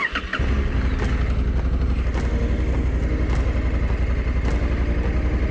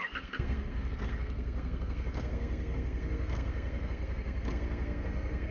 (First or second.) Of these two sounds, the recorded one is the first